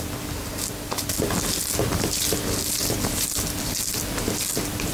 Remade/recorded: recorded